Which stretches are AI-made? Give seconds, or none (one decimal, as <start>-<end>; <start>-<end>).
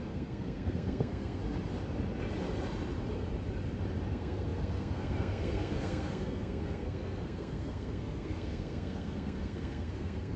0.0-1.4; 4.1-10.4